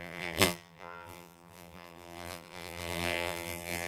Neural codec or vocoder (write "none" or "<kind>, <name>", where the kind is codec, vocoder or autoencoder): vocoder, BigVGAN v2